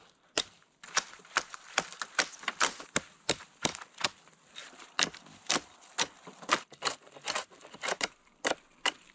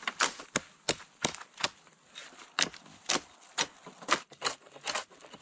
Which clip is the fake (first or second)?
first